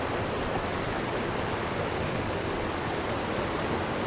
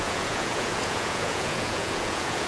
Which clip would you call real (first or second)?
first